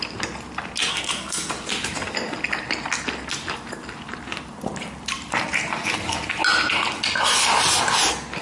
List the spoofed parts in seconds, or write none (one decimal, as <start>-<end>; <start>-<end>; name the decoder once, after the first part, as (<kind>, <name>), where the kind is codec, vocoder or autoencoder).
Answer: 0.9-1.5 (codec, SNAC)